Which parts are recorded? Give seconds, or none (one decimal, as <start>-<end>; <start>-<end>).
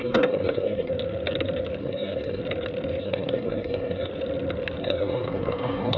0.9-1.8; 2.4-3.0; 4.1-4.8